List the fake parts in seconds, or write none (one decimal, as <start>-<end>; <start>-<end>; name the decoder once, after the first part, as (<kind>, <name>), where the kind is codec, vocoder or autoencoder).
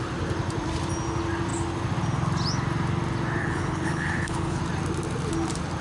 3.4-4.6 (codec, HILCodec)